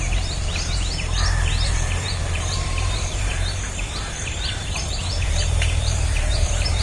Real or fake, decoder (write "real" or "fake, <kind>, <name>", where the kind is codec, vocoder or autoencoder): fake, vocoder, BigVGAN v2